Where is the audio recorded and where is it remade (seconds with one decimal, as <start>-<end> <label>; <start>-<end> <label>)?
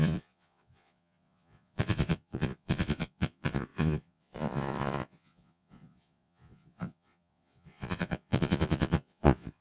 0.0-9.6 remade